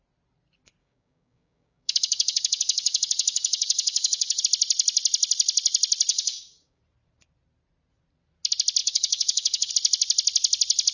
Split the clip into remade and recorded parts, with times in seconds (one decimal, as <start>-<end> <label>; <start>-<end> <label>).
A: 0.0-0.8 recorded; 0.8-4.4 remade; 4.4-6.1 recorded; 6.1-6.8 remade; 6.8-8.8 recorded; 8.8-9.7 remade; 9.7-10.9 recorded